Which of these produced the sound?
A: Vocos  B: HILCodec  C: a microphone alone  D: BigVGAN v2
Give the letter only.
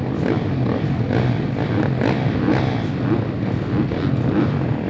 C